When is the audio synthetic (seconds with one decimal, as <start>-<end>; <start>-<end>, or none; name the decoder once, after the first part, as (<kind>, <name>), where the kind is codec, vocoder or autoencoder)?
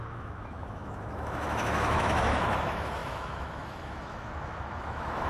0.0-5.3 (autoencoder, DAC-VAE)